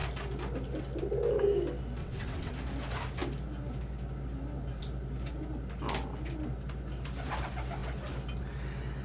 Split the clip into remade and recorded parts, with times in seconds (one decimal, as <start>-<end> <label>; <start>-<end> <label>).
0.0-2.0 recorded; 2.0-2.5 remade; 2.5-9.0 recorded